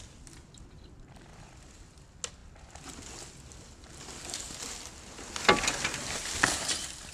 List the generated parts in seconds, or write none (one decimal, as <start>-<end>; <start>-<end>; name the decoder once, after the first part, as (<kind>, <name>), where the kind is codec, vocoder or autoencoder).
none